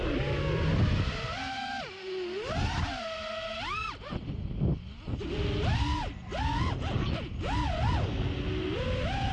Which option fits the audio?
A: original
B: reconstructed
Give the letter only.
A